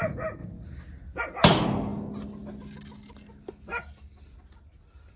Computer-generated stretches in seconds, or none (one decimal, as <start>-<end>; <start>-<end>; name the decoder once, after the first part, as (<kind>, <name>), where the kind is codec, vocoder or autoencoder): none